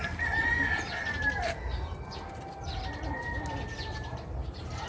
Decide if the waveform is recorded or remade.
recorded